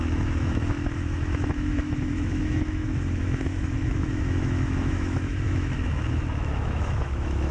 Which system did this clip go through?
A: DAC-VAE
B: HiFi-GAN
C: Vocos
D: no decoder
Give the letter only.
A